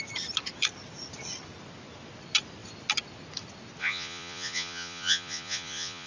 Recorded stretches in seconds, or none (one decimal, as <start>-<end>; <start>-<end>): 0.0-3.8